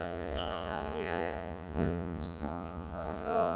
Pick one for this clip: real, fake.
fake